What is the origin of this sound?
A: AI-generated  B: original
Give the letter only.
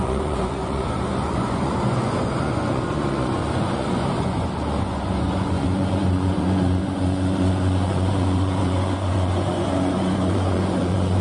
A